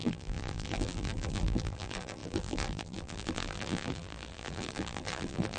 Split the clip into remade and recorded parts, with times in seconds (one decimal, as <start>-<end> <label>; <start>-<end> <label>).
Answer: 0.0-5.6 remade